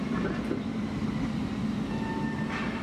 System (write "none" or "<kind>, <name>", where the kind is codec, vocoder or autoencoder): none